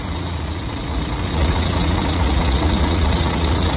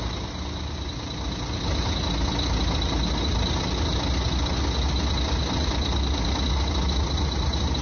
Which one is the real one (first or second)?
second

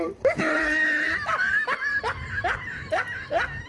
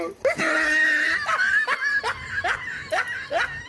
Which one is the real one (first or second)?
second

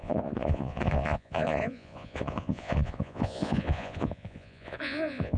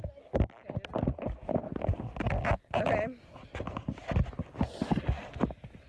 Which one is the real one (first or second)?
second